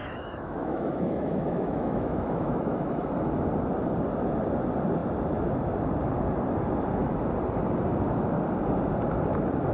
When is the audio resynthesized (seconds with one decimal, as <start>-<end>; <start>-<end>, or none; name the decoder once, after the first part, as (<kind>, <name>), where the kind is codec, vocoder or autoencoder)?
0.0-3.1 (autoencoder, DAC-VAE)